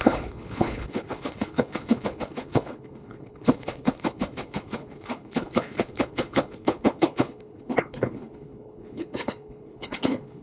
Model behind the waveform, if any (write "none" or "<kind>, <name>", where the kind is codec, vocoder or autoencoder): codec, HILCodec